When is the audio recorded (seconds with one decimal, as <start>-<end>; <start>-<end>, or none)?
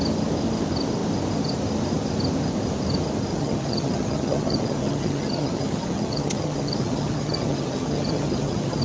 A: 0.0-3.3